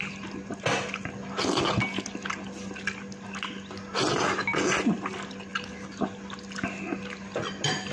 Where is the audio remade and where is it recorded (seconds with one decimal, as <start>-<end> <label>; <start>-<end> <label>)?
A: 0.0-7.9 recorded